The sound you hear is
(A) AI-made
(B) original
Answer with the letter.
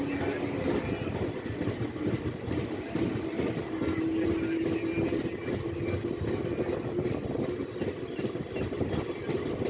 B